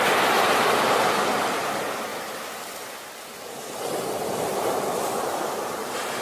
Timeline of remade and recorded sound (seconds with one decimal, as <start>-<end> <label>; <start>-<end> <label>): 0.0-2.1 recorded; 2.1-3.1 remade; 3.1-6.2 recorded